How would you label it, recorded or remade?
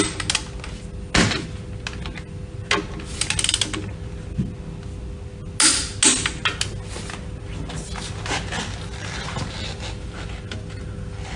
recorded